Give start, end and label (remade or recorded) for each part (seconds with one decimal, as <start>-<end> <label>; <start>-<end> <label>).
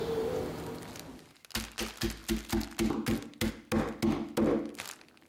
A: 0.0-5.3 recorded